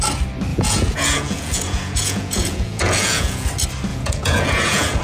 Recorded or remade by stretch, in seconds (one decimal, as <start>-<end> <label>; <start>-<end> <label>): 0.0-0.5 recorded; 0.5-3.5 remade; 3.5-3.9 recorded; 3.9-5.0 remade